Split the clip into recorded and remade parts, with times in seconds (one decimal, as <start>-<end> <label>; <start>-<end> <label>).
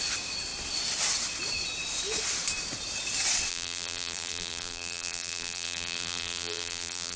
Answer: 0.0-3.5 recorded; 3.5-7.2 remade